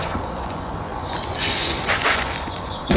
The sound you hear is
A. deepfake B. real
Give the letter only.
A